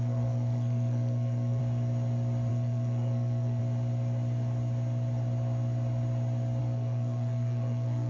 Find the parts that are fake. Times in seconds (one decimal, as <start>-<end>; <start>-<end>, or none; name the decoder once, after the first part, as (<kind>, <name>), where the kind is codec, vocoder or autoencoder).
0.0-1.6 (codec, SNAC); 2.5-3.6; 6.6-8.1